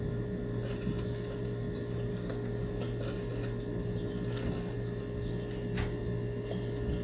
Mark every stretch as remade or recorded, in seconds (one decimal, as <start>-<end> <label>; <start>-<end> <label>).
0.0-2.1 recorded; 2.1-2.7 remade; 2.7-7.0 recorded